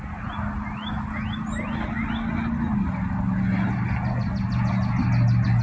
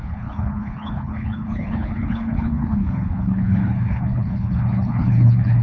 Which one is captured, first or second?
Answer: first